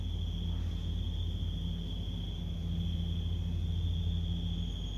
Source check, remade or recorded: recorded